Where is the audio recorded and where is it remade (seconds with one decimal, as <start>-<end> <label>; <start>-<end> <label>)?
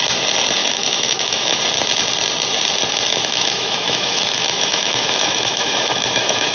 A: 0.0-0.6 recorded; 0.6-1.6 remade; 1.6-3.1 recorded; 3.1-6.5 remade